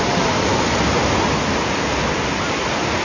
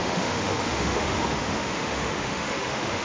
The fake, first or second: second